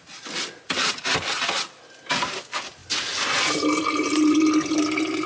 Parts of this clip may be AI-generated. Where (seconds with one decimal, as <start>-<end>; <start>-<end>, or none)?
none

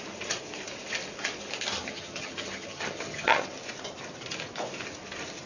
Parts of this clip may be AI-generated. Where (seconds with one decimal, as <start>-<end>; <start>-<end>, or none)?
1.7-3.5